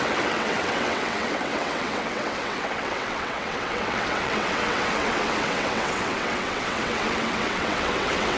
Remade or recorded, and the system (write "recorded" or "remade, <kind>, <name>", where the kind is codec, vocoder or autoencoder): remade, vocoder, WaveNeXt